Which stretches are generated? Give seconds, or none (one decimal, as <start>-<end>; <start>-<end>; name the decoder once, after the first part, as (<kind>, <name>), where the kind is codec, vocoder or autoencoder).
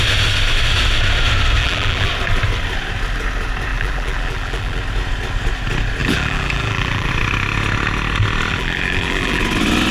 1.6-2.1 (vocoder, BigVGAN v2); 3.7-4.8; 6.0-7.1; 8.5-9.4